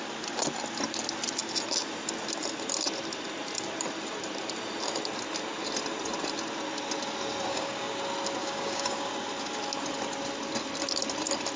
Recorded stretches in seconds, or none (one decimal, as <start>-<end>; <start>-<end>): 0.0-7.5; 8.0-8.4; 9.1-11.6